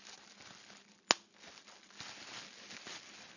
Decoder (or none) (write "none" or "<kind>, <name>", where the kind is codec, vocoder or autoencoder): none